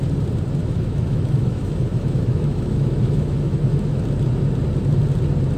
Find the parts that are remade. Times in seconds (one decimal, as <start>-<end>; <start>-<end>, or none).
0.6-4.0